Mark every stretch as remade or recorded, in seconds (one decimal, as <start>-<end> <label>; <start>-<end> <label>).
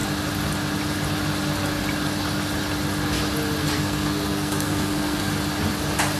0.0-3.6 recorded; 3.6-5.3 remade; 5.3-6.2 recorded